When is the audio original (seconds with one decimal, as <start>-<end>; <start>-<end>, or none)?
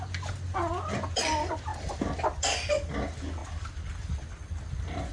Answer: 0.0-5.1